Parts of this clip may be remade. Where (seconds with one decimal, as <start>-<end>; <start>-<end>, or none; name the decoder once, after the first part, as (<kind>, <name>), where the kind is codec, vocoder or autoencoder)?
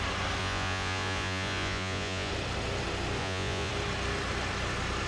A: 0.4-2.3 (vocoder, Vocos); 3.2-3.7